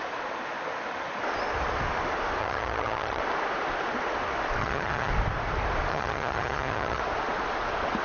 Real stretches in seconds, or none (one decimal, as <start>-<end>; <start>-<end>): 0.0-2.4; 3.2-4.6; 5.1-5.9; 7.0-8.0